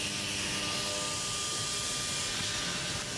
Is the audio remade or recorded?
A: recorded